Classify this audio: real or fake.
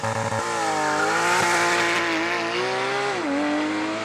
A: real